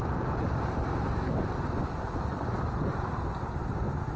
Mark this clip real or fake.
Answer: real